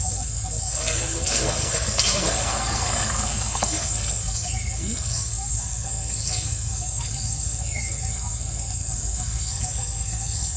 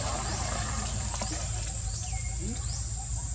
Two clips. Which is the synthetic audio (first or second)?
first